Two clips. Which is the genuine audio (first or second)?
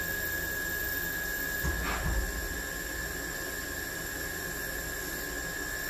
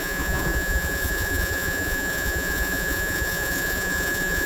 first